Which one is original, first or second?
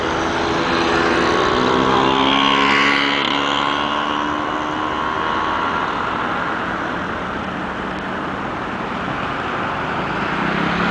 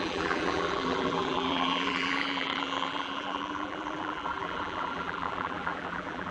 first